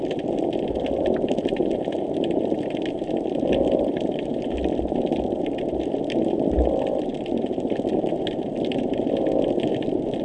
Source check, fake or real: real